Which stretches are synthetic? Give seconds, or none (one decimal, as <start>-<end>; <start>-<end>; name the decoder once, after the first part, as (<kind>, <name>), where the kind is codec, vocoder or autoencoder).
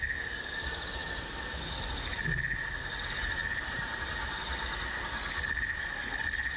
none